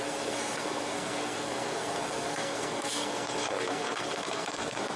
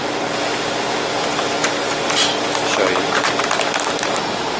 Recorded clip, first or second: second